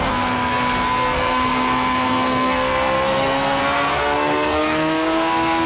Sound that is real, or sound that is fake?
fake